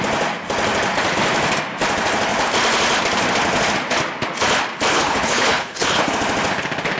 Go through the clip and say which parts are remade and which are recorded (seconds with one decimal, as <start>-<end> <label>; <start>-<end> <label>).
0.0-4.9 recorded; 4.9-6.1 remade; 6.1-7.0 recorded